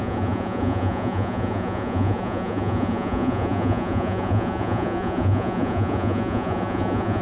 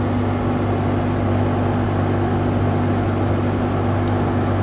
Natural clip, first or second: second